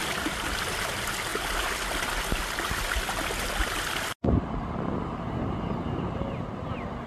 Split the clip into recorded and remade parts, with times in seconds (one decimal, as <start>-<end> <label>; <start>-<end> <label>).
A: 0.0-7.1 recorded

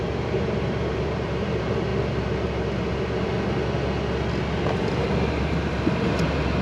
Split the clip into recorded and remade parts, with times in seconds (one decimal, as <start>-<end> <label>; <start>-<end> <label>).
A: 0.0-1.9 remade; 1.9-4.8 recorded; 4.8-6.6 remade